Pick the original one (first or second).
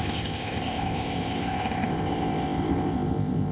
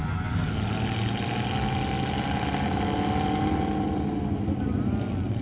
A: second